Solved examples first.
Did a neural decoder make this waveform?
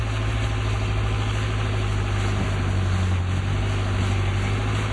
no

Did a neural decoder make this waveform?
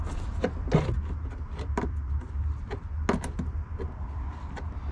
no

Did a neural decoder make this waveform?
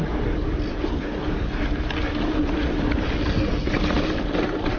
no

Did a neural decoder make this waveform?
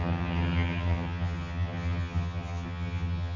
yes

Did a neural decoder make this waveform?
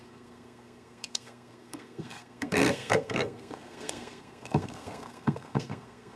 yes